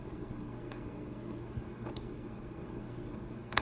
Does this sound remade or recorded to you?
remade